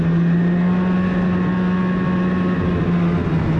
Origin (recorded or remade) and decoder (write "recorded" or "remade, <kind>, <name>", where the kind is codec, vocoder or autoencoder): recorded